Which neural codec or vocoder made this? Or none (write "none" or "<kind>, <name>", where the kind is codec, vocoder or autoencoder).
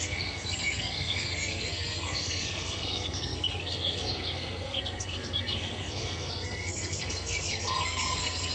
codec, SNAC